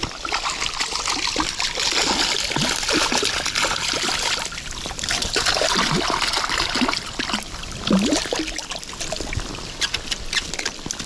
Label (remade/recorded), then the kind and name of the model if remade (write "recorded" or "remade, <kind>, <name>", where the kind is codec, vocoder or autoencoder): recorded